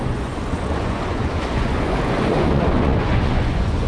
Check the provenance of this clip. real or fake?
fake